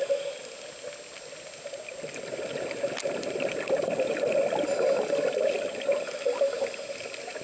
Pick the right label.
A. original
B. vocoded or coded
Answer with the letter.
A